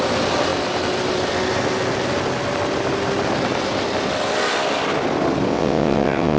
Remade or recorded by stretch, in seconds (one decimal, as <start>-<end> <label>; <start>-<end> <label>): 0.0-5.5 recorded; 5.5-6.4 remade